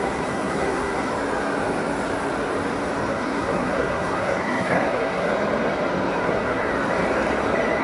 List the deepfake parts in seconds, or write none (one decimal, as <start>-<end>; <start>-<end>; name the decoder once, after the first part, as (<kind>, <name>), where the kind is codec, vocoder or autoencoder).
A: 0.0-1.1 (codec, SNAC); 3.1-5.3; 6.2-6.7

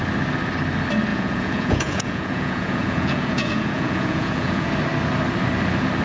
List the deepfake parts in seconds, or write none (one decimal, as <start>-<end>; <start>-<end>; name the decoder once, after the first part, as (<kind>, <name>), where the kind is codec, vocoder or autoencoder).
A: 1.1-4.7 (vocoder, Vocos)